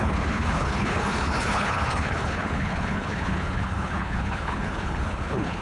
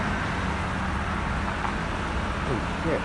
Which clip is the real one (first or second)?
second